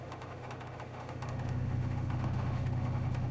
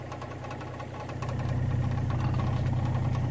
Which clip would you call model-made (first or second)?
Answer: first